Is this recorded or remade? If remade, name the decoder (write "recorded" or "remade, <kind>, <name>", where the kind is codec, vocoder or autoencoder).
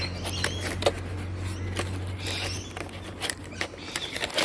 recorded